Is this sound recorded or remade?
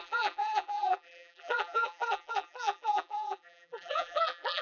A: remade